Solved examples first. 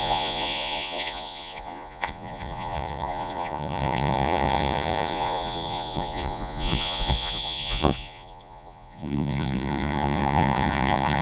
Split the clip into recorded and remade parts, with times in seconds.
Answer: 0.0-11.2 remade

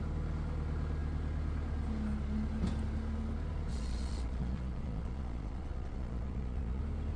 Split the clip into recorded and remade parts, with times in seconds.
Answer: 0.0-3.7 recorded; 3.7-6.8 remade; 6.8-7.2 recorded

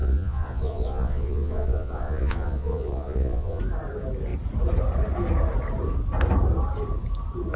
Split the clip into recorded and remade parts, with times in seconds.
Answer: 0.0-3.6 remade; 3.6-7.6 recorded